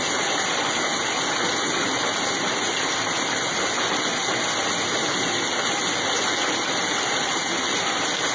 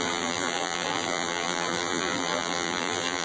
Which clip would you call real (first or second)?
first